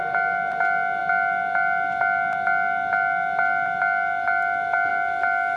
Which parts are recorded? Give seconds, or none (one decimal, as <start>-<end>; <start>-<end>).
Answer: 0.0-5.6

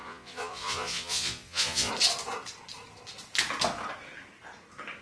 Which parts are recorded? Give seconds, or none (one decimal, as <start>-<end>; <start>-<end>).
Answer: 1.9-5.0

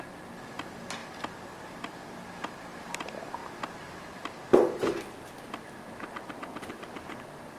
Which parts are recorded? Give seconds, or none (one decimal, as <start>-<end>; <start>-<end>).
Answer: 0.0-7.6